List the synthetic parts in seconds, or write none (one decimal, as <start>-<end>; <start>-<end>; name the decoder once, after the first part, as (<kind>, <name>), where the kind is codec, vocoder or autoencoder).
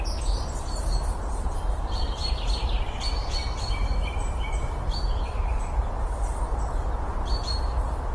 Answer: 2.2-2.8 (vocoder, BigVGAN v2); 3.8-8.1